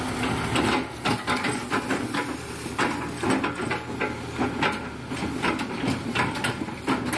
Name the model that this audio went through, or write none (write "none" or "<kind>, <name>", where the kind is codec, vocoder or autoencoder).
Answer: none